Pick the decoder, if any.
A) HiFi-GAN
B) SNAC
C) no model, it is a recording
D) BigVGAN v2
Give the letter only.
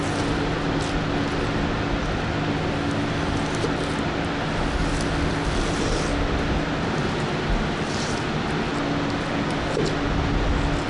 C